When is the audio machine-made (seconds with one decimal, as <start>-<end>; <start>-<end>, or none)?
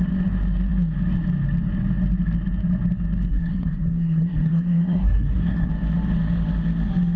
3.3-5.7